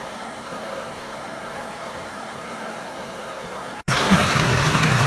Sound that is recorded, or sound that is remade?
remade